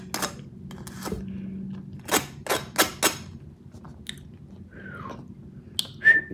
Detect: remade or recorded recorded